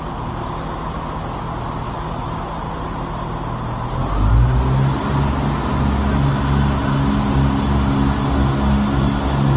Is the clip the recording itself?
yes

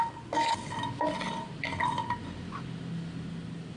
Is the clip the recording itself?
yes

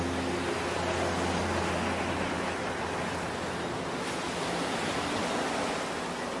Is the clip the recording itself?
yes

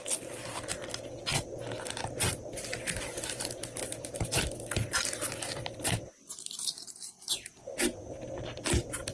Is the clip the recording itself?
yes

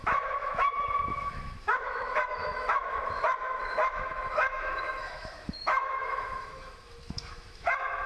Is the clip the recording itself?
no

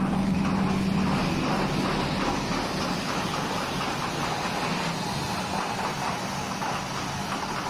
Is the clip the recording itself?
yes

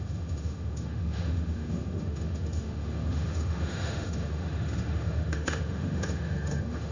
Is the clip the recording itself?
no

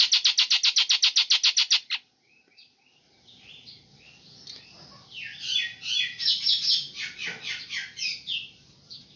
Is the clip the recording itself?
yes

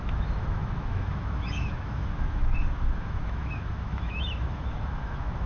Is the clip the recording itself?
no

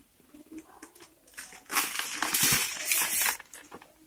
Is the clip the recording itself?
yes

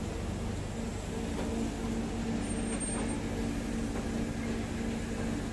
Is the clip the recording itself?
yes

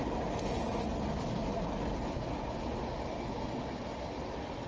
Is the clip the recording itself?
yes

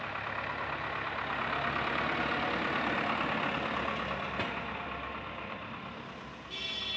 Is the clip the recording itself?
yes